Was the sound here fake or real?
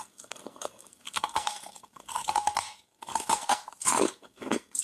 fake